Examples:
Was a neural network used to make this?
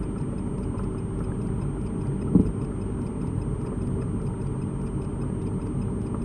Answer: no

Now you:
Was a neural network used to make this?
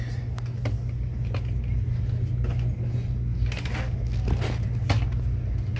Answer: no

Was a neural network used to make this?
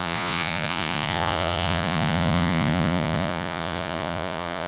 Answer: yes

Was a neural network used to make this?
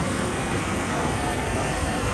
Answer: yes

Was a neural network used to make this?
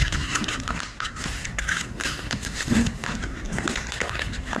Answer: yes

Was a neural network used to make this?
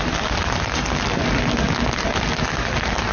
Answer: no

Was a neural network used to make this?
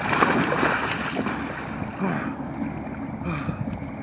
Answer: no